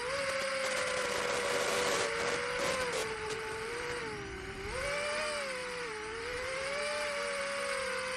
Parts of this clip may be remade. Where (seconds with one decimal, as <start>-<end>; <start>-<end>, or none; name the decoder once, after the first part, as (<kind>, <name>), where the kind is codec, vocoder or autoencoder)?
3.0-4.0 (vocoder, BigVGAN v2); 5.6-7.4